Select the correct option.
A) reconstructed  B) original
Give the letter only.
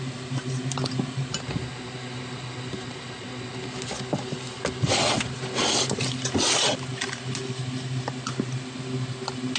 B